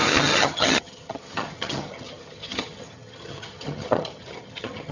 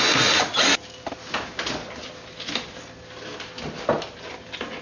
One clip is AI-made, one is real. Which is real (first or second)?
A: second